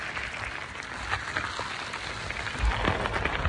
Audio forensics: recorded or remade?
recorded